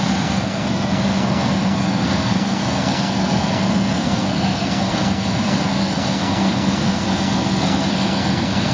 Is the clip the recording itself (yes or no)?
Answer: no